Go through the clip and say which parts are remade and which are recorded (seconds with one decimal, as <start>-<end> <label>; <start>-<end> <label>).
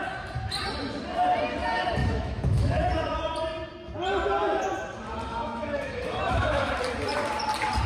0.0-2.0 recorded; 2.0-3.2 remade; 3.2-5.3 recorded; 5.3-6.7 remade; 6.7-7.9 recorded